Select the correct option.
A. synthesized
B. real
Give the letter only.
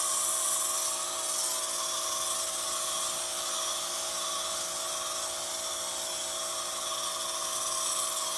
B